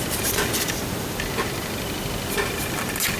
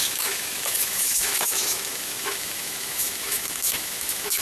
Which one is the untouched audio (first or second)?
first